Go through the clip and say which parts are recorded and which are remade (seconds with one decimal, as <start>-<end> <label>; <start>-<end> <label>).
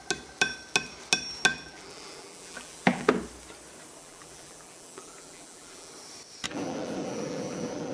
0.0-1.5 recorded; 1.5-3.1 remade; 3.1-4.0 recorded; 4.0-5.9 remade; 5.9-6.5 recorded; 6.5-7.9 remade